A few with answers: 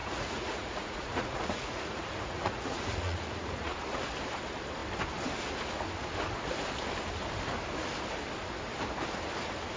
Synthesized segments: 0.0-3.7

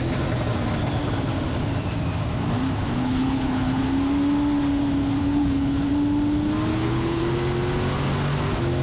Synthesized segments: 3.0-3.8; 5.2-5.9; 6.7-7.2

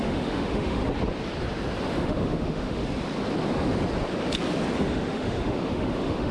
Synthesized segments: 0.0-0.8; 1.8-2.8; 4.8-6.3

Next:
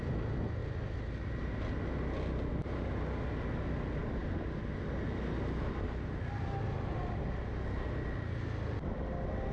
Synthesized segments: none

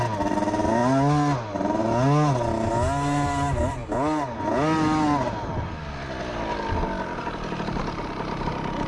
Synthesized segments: none

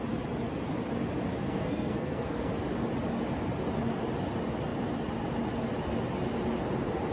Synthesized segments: 1.3-2.5

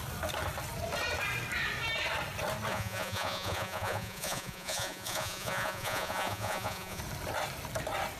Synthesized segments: 2.7-7.0

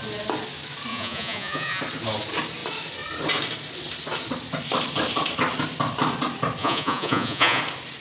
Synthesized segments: 0.9-1.8; 6.6-7.6